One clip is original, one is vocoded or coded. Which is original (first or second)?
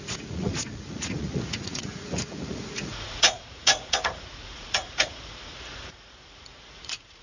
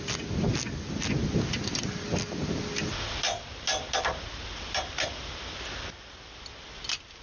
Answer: second